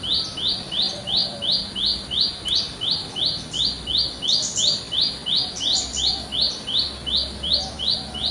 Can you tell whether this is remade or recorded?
recorded